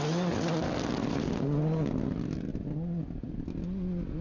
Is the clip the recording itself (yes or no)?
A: yes